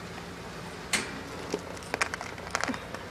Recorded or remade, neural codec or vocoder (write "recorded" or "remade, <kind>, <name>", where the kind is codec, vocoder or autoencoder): recorded